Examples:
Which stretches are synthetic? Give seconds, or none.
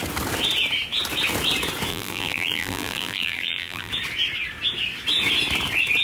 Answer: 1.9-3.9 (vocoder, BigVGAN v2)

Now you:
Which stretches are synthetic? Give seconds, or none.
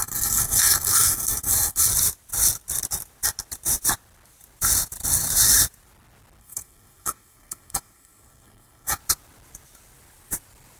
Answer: 0.0-1.9 (codec, SNAC); 6.4-9.0